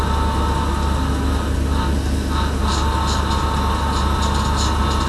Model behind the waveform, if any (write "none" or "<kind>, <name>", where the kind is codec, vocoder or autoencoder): none